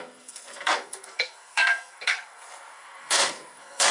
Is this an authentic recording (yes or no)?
no